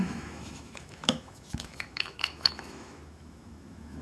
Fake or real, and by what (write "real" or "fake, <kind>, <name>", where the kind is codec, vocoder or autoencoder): fake, autoencoder, DAC-VAE